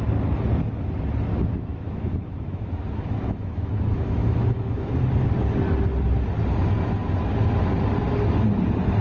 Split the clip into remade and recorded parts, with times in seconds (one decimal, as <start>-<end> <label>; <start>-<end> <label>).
0.0-1.3 recorded; 1.3-4.9 remade; 4.9-9.0 recorded